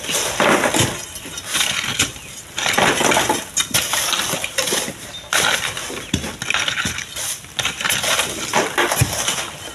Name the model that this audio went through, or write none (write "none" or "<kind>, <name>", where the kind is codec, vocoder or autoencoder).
none